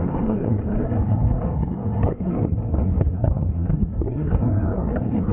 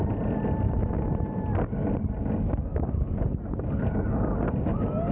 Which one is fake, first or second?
first